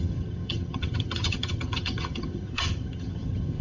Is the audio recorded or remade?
remade